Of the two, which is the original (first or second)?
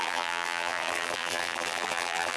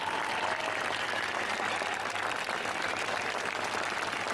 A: second